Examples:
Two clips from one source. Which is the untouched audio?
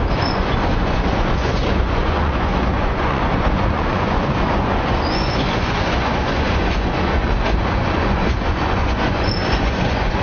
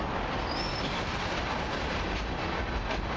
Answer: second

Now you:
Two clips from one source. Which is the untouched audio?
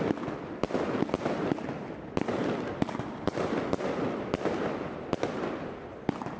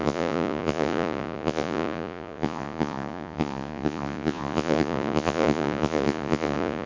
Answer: first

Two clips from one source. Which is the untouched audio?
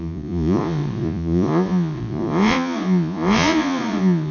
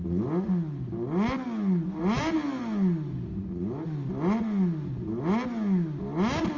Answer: second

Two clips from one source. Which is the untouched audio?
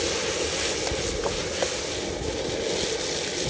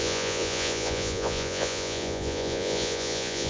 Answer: first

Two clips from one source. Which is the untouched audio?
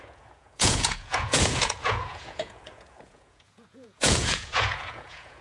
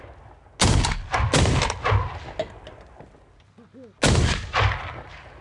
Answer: second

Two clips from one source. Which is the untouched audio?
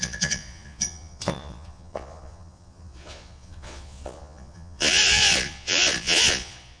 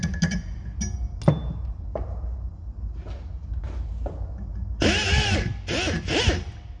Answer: second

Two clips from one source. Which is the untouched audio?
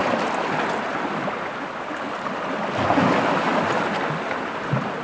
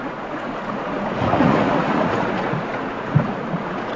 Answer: first